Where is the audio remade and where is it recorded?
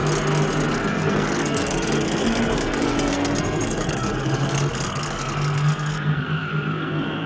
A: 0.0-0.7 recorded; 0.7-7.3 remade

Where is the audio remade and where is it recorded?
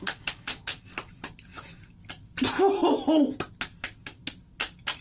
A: 0.0-5.0 recorded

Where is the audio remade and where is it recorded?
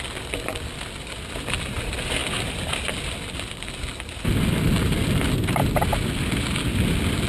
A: 0.0-7.3 recorded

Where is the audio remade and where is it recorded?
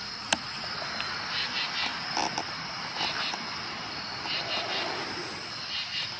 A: 0.0-6.2 recorded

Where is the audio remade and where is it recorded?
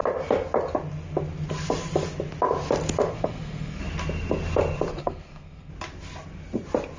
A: 0.0-3.1 recorded; 3.1-3.8 remade; 3.8-5.0 recorded; 5.0-5.7 remade; 5.7-7.0 recorded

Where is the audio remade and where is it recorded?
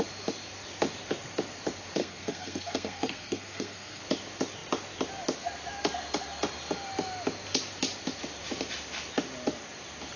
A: 0.0-2.0 recorded; 2.0-4.0 remade; 4.0-10.2 recorded